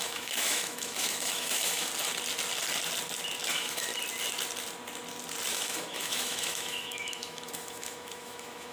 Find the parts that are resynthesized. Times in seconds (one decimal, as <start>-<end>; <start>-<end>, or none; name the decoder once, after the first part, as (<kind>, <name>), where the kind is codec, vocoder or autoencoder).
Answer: 0.0-1.9 (autoencoder, DAC-VAE); 3.5-3.9; 5.5-8.7